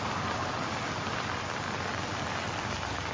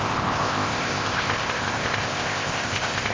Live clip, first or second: first